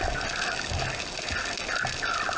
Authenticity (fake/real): real